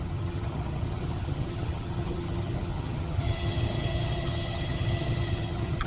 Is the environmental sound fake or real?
fake